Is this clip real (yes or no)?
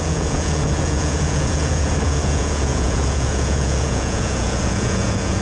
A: no